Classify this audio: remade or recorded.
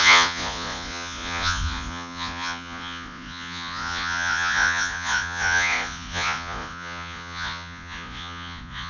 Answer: remade